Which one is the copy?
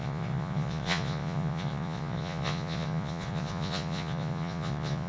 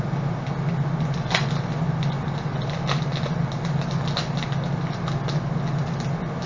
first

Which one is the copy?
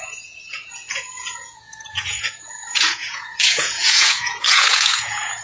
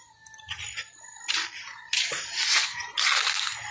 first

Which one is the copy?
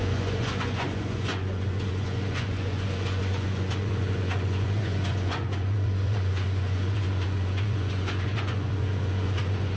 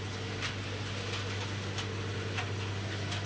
first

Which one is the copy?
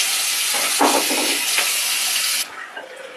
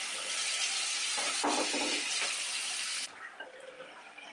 first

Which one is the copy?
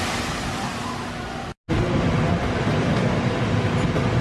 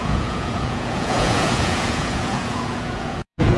second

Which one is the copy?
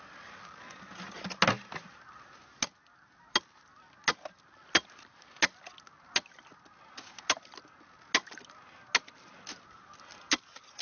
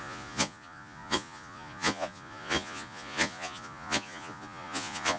second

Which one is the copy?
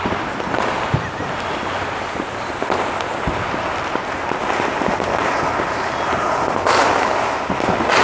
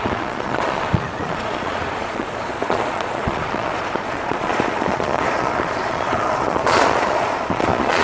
second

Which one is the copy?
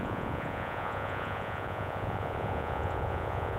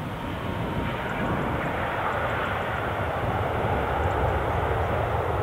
first